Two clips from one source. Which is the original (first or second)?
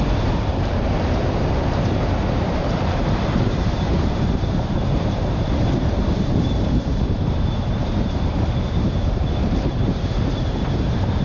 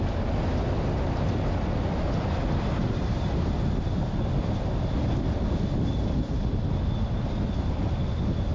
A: second